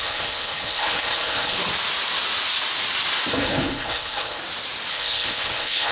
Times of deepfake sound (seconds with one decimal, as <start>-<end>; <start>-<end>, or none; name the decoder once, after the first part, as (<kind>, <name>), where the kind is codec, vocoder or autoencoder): 0.0-1.6 (codec, HILCodec); 3.3-4.4; 4.9-5.9